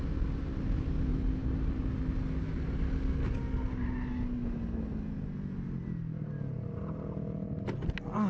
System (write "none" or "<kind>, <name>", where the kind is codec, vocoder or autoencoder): none